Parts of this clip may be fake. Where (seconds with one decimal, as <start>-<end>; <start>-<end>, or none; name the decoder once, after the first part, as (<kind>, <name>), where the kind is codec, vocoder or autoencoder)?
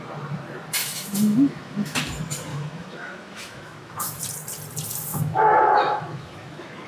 0.8-2.0 (autoencoder, DAC-VAE); 2.5-4.2; 5.1-6.9